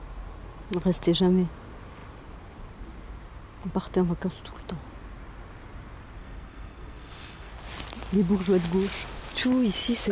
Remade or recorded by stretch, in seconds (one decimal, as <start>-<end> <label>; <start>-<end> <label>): 0.0-6.2 recorded; 6.2-7.5 remade; 7.5-10.1 recorded